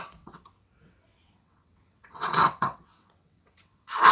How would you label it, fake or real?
fake